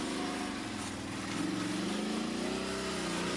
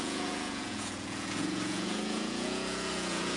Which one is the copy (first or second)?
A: second